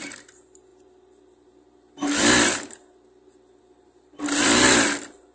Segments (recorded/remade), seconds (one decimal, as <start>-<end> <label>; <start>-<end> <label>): 0.0-5.3 recorded